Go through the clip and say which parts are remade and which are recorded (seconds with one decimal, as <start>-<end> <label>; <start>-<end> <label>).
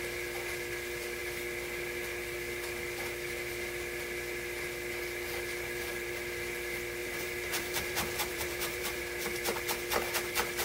0.0-7.0 recorded; 7.0-9.0 remade; 9.0-10.6 recorded